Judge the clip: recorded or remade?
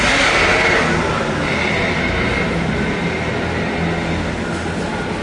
recorded